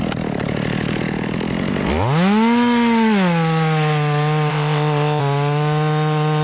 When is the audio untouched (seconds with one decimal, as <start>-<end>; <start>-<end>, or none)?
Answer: 0.0-4.5; 5.2-6.4